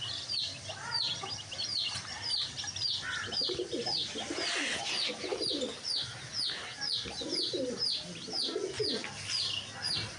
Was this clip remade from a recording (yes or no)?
no